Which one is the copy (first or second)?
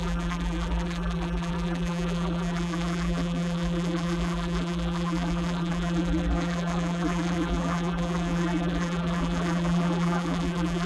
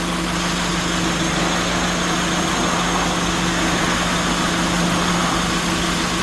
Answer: first